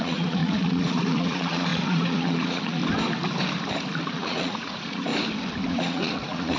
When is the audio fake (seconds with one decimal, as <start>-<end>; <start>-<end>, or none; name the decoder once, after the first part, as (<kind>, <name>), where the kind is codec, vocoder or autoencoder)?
0.0-2.8 (vocoder, Vocos); 4.0-5.1; 5.7-6.6